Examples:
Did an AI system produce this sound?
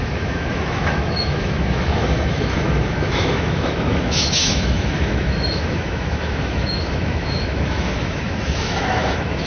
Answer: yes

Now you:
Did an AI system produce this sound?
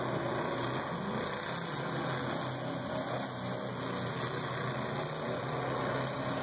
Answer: no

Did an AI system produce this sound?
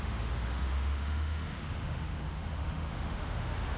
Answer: yes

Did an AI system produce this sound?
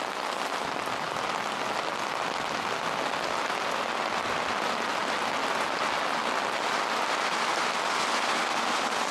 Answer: no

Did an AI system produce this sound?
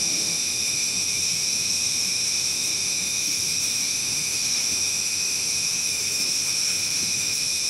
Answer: yes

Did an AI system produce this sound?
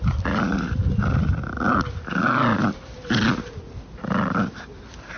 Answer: no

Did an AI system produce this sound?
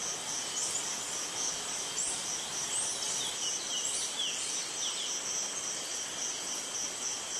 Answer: no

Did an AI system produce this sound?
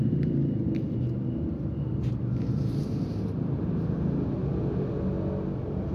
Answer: no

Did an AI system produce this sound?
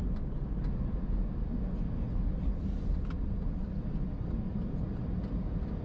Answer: no